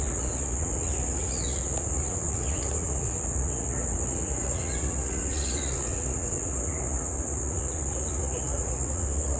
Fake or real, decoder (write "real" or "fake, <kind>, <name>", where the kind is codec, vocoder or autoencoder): fake, vocoder, Vocos